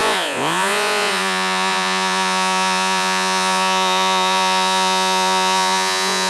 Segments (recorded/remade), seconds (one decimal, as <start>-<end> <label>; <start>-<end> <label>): 0.0-6.3 remade